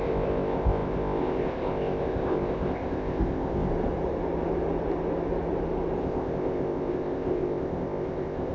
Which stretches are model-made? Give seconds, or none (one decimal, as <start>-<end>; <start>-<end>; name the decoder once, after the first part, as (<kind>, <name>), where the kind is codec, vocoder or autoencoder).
0.0-3.7 (codec, ZipCodec); 6.0-8.5